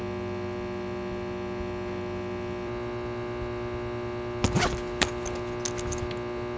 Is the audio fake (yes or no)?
no